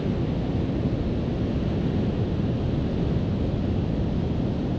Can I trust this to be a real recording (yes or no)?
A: yes